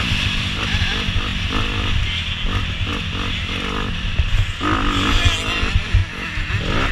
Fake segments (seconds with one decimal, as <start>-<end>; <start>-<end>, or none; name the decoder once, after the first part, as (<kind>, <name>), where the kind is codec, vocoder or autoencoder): 1.3-2.0 (vocoder, BigVGAN v2); 2.9-4.1; 6.0-6.5